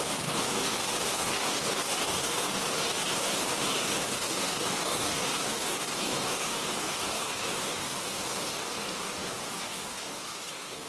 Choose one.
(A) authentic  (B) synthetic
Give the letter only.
B